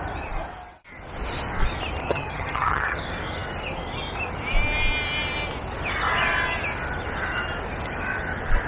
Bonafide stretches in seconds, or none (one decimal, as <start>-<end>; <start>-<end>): 0.0-2.0; 3.0-8.7

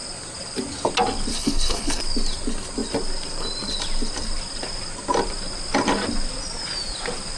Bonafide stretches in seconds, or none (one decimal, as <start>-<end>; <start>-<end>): 0.0-1.3; 2.0-7.4

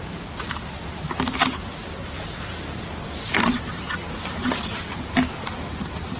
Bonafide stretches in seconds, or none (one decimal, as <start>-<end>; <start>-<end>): 0.0-6.2

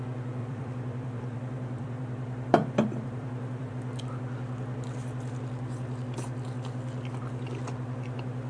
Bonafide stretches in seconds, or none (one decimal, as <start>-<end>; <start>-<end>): 0.0-0.4; 3.7-8.5